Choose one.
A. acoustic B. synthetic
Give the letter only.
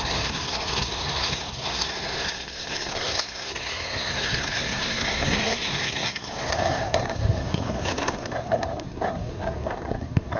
B